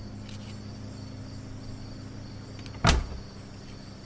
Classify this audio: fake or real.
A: real